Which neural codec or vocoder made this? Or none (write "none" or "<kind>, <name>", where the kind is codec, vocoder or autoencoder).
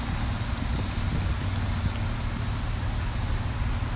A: none